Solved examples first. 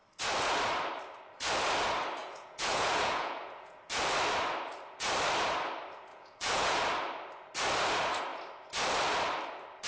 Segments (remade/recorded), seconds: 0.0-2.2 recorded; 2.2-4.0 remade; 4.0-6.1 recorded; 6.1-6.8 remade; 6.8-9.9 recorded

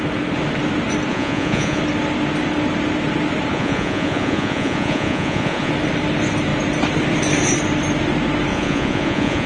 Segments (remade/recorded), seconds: 0.0-1.1 recorded; 1.1-1.8 remade; 1.8-3.5 recorded; 3.5-5.7 remade; 5.7-8.5 recorded; 8.5-9.5 remade

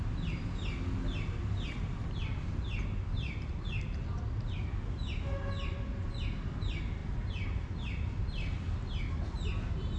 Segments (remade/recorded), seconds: 0.0-10.0 recorded

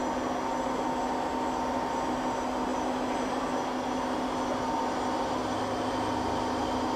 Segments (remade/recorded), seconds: 0.0-7.0 recorded

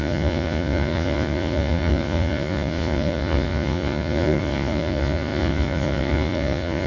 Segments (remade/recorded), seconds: 0.0-6.9 remade